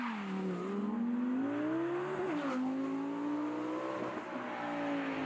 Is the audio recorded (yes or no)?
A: yes